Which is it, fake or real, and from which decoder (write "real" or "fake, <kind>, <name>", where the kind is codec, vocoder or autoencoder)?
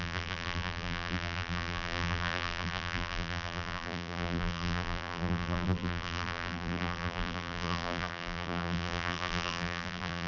fake, vocoder, BigVGAN v2